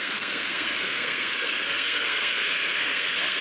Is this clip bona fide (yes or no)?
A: no